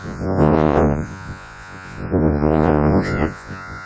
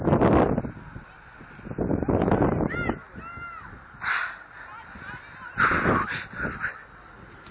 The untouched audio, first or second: second